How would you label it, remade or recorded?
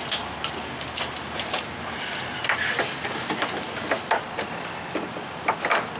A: recorded